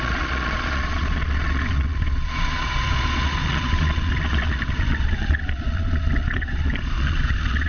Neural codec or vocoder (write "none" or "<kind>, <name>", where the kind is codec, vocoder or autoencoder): vocoder, Vocos